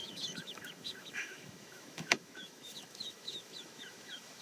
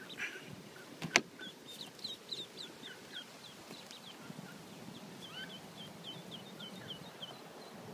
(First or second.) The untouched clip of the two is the second